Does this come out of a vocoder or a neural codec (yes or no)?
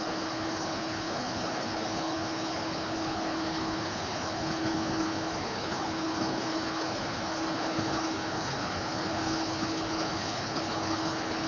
yes